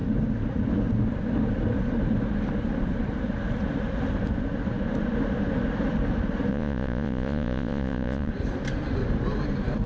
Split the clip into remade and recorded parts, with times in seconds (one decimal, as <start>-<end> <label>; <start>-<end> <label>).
0.0-6.5 recorded; 6.5-8.3 remade; 8.3-9.9 recorded